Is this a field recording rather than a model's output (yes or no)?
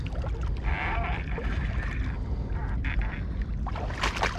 yes